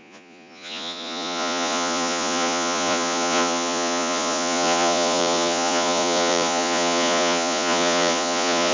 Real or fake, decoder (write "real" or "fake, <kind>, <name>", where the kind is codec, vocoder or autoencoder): fake, vocoder, Vocos